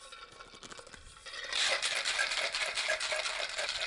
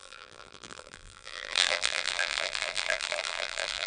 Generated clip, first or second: second